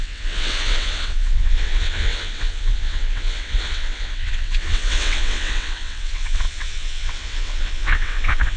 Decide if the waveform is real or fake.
fake